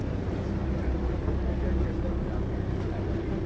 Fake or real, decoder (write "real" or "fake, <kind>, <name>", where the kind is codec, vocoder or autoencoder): real